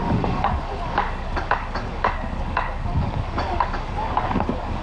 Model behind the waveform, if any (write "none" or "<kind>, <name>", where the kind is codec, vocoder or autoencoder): codec, DAC